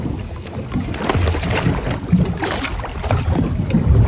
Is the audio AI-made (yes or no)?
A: no